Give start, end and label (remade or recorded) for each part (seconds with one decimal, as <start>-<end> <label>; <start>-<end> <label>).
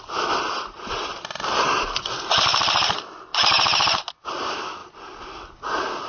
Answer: 0.0-6.1 recorded